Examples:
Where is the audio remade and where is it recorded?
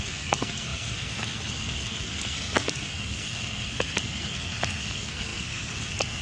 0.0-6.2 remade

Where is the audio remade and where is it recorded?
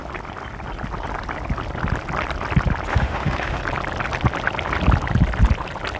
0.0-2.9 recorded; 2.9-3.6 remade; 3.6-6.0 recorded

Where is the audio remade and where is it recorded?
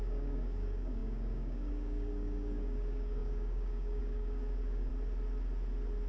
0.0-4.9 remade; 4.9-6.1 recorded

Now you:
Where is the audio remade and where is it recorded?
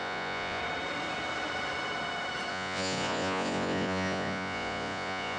0.0-0.6 remade; 0.6-2.5 recorded; 2.5-5.4 remade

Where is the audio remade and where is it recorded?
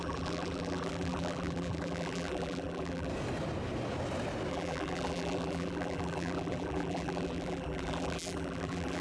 0.0-3.1 remade; 3.1-4.5 recorded; 4.5-9.0 remade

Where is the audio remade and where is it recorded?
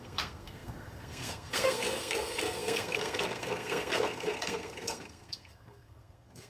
0.0-6.5 remade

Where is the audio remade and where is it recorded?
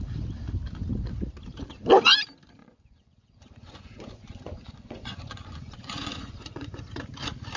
0.0-2.6 recorded; 2.6-6.8 remade; 6.8-7.6 recorded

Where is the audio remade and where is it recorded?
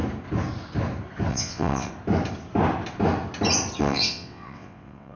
0.0-1.3 recorded; 1.3-1.9 remade; 1.9-3.8 recorded; 3.8-5.2 remade